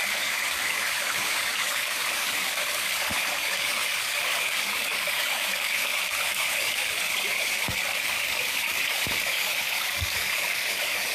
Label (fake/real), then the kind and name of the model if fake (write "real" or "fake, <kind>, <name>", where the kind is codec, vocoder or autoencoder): fake, codec, DAC